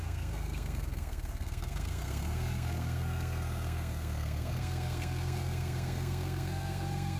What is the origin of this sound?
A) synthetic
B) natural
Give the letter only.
A